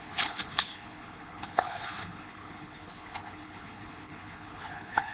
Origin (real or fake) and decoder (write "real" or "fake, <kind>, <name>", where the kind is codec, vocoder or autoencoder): fake, codec, HILCodec